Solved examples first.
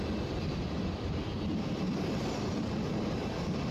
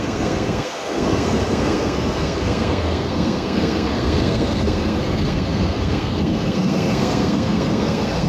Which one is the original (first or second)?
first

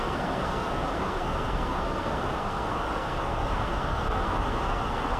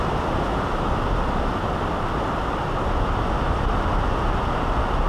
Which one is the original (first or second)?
second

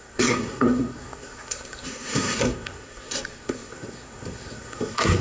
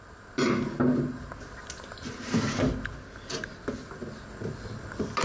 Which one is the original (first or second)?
second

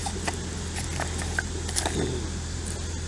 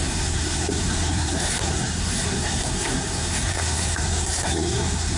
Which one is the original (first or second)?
first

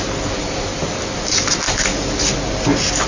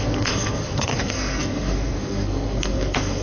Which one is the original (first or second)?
first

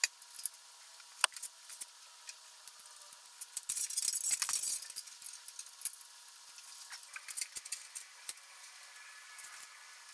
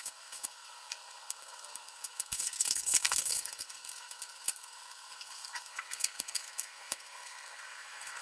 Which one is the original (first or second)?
first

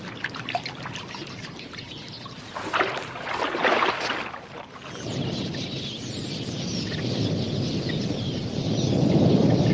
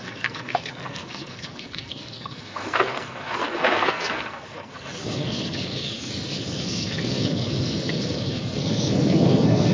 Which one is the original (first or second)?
first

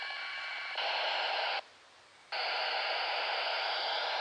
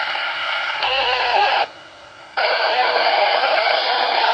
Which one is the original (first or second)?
first